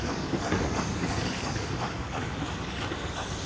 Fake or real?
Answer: fake